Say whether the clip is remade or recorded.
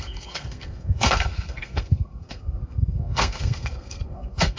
remade